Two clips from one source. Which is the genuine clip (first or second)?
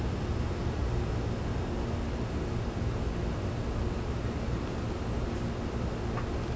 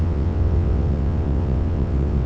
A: first